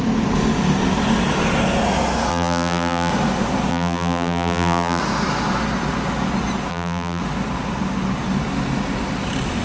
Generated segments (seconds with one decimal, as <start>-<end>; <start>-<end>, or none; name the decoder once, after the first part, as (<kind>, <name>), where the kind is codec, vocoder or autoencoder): 2.3-3.1 (vocoder, BigVGAN v2); 3.7-5.0; 6.7-7.2